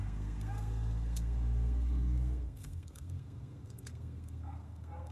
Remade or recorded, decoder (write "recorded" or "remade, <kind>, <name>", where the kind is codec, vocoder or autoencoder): remade, codec, SNAC